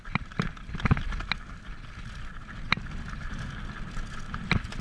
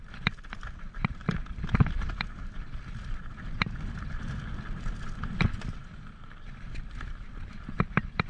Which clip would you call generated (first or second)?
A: second